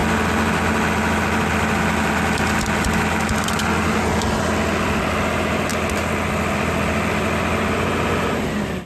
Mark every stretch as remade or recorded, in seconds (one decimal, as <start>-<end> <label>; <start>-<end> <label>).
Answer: 0.0-8.9 recorded